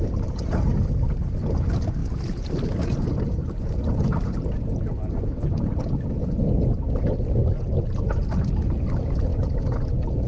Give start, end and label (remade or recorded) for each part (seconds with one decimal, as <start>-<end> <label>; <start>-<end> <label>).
0.0-10.3 recorded